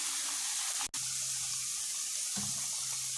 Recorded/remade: recorded